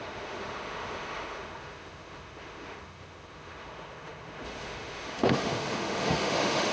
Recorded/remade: remade